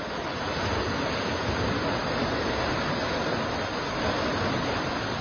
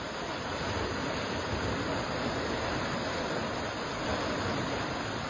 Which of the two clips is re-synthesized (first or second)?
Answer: second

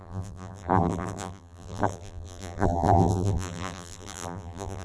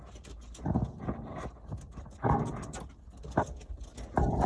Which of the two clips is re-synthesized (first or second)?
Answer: first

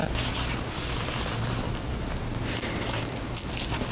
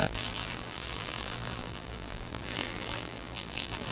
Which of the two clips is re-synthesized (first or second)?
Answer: second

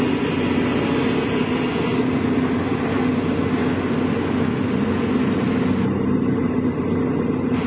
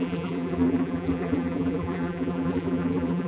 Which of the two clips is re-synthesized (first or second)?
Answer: second